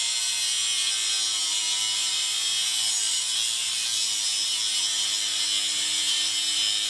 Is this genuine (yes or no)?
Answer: yes